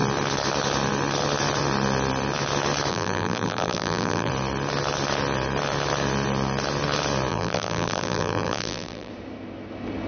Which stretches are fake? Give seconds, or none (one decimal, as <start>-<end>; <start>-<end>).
2.9-4.3; 7.3-9.1